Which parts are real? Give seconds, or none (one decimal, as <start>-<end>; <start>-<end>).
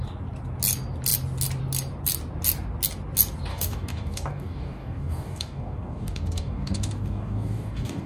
0.0-3.5